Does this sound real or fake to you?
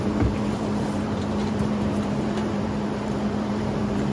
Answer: fake